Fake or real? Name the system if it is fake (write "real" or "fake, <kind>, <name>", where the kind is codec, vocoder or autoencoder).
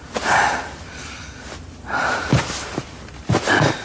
real